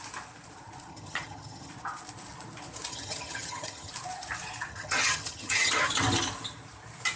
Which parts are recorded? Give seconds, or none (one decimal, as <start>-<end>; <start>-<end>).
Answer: 0.0-0.9; 1.7-2.9; 3.9-4.7; 5.9-7.2